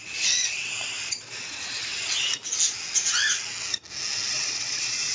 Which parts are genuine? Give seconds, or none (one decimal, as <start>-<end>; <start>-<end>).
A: 2.3-4.3